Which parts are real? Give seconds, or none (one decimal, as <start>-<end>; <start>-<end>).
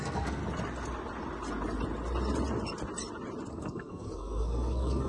0.4-3.5